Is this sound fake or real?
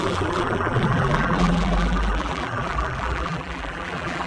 fake